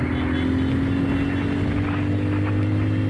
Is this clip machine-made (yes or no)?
no